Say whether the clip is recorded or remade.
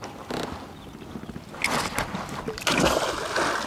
recorded